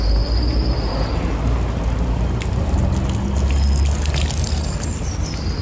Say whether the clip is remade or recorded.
recorded